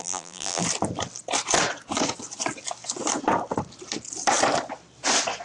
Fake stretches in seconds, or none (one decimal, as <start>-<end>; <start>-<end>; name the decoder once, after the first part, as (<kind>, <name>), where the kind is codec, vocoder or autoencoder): 0.0-0.6 (vocoder, BigVGAN v2)